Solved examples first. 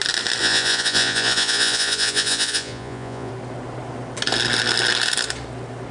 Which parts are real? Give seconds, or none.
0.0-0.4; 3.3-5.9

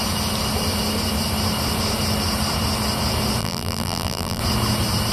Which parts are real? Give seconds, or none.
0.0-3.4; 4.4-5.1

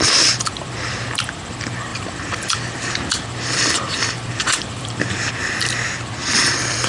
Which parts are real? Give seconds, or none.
0.0-1.9; 5.3-6.2